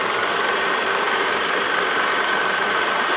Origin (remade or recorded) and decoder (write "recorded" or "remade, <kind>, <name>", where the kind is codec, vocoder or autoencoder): recorded